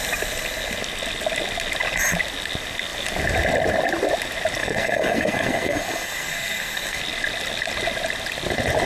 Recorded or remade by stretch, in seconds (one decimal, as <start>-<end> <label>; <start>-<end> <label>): 0.0-4.6 recorded; 4.6-7.0 remade; 7.0-8.9 recorded